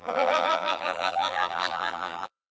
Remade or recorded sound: remade